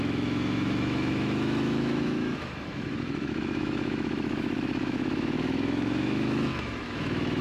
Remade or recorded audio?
remade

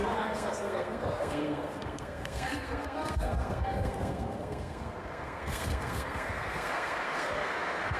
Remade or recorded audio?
remade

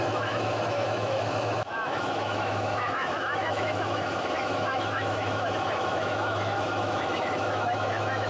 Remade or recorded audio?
remade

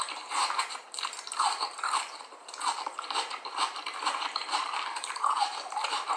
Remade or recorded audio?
remade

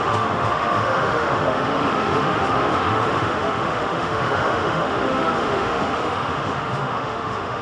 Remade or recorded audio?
remade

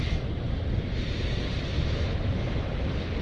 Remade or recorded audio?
recorded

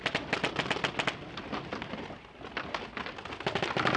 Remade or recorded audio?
recorded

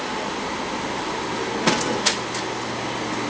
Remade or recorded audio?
recorded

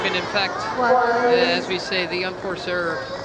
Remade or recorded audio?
recorded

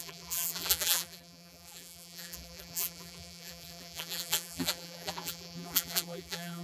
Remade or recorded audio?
remade